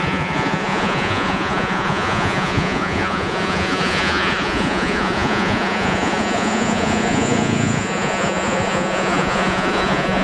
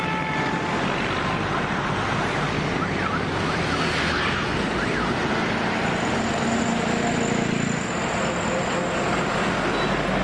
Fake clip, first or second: first